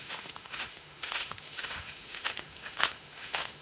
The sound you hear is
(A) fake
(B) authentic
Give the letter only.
A